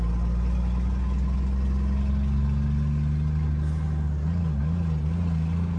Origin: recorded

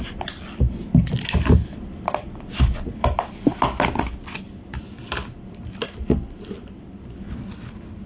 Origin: recorded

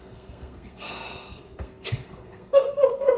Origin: remade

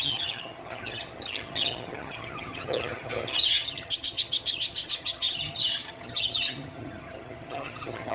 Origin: remade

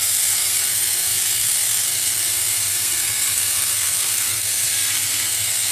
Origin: remade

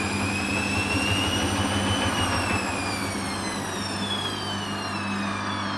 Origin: recorded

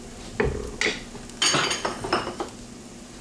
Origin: recorded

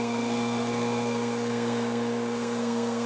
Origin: remade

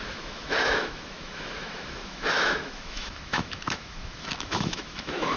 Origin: remade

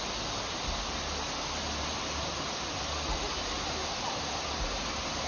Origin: recorded